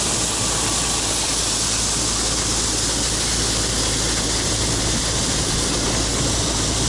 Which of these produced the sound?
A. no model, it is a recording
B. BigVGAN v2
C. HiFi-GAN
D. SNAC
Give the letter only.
B